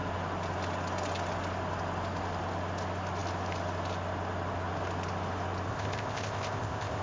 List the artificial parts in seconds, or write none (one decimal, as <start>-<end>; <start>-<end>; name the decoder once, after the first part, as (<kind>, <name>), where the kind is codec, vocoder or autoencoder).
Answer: 5.7-7.0 (codec, ZipCodec)